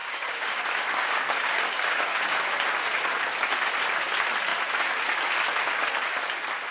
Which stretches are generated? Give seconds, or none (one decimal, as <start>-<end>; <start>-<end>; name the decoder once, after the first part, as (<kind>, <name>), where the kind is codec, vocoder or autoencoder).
0.0-0.6 (codec, DAC); 1.0-2.5